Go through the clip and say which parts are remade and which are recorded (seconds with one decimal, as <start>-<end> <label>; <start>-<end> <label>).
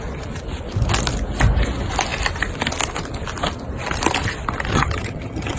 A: 0.0-4.7 recorded; 4.7-5.6 remade